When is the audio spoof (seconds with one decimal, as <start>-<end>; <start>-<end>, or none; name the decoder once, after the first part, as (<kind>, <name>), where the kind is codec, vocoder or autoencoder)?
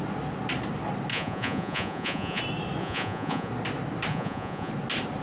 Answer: 1.1-2.4 (vocoder, Vocos); 2.8-3.5; 4.1-4.7